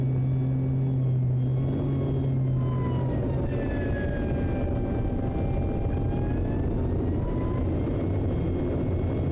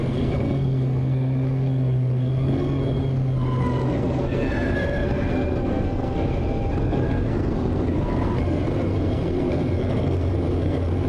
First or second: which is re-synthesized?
second